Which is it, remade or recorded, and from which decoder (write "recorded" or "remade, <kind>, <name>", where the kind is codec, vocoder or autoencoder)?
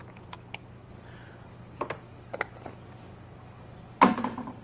recorded